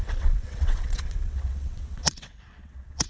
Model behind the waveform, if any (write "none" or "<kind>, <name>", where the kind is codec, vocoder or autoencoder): vocoder, WaveNeXt